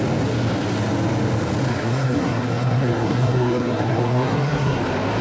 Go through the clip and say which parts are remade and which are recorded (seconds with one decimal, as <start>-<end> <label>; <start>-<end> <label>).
0.0-1.7 recorded; 1.7-4.8 remade; 4.8-5.2 recorded